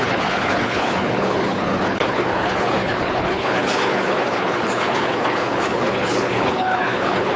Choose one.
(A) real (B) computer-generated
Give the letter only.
B